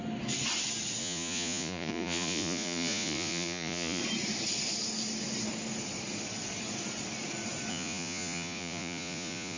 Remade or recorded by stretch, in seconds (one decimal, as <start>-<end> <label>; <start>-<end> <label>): 0.0-1.0 recorded; 1.0-4.0 remade; 4.0-7.7 recorded; 7.7-9.6 remade